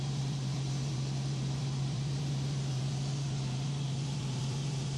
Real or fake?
fake